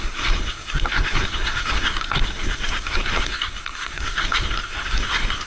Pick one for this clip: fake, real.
fake